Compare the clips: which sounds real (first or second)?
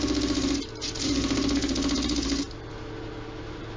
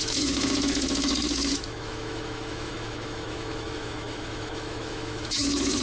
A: first